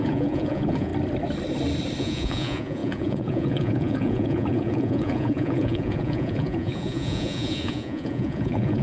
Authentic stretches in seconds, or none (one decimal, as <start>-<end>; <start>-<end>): 0.9-2.0